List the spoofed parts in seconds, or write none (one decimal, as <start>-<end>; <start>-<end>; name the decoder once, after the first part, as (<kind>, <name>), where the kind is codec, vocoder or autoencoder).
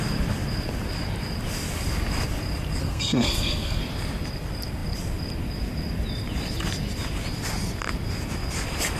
2.8-3.8 (codec, SNAC)